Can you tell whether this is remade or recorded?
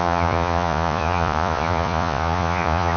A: remade